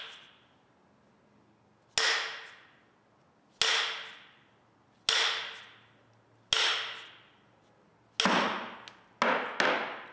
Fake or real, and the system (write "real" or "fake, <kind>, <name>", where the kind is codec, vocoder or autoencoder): real